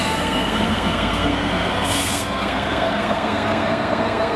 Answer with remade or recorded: remade